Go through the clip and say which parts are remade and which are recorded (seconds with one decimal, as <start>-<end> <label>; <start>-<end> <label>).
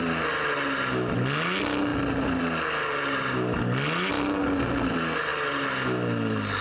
0.0-6.6 recorded